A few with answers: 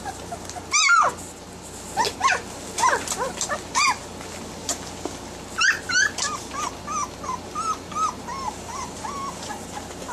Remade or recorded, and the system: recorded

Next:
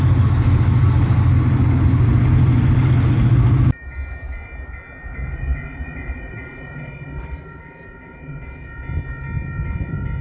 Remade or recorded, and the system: recorded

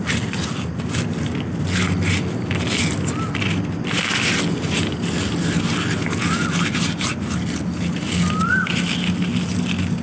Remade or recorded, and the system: recorded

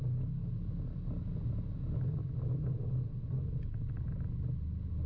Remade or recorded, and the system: recorded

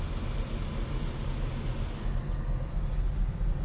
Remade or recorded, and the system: recorded